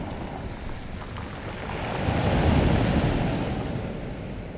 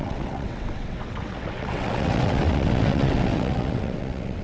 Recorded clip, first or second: first